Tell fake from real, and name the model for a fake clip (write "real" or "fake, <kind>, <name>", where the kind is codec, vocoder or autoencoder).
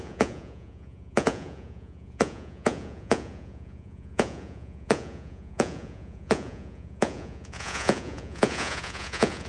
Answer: fake, vocoder, Vocos